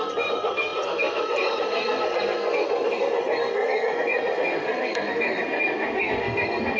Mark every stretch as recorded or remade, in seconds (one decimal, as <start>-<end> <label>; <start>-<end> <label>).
0.0-6.8 remade